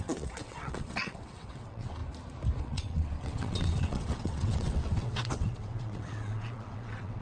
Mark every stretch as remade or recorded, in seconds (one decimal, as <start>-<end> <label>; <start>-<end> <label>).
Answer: 0.0-2.0 remade; 2.0-2.6 recorded; 2.6-7.2 remade